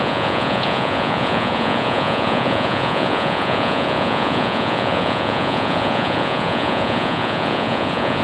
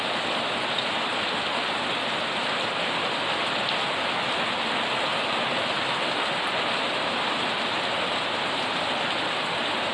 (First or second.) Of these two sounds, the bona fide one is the second